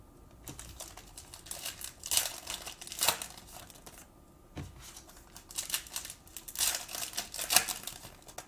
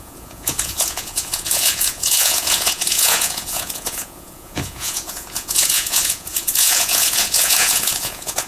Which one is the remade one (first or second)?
second